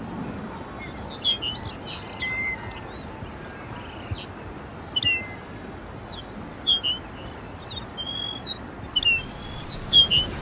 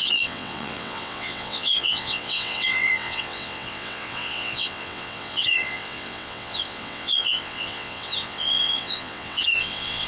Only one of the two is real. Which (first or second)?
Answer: first